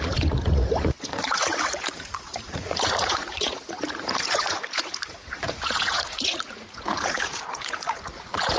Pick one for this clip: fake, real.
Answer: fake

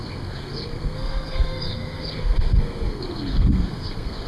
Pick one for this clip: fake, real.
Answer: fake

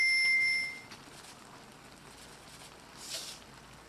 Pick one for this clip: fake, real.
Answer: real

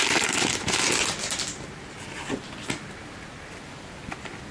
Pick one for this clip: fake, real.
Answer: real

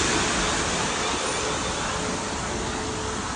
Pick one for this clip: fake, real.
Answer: real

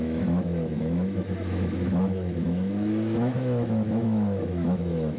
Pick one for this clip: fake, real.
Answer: fake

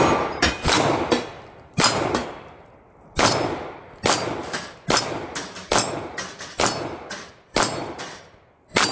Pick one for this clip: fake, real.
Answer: real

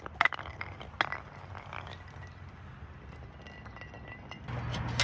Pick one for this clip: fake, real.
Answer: real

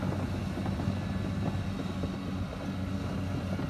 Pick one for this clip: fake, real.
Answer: real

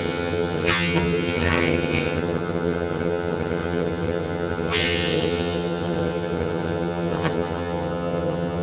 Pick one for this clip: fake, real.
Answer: fake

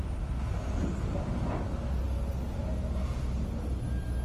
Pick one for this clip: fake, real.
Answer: real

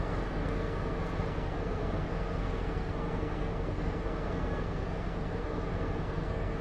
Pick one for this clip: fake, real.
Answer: fake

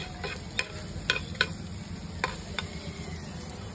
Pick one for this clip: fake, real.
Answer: real